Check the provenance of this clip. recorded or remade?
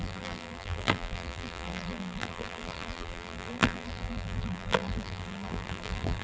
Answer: remade